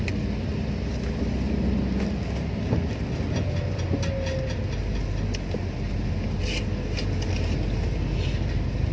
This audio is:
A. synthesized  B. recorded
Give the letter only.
B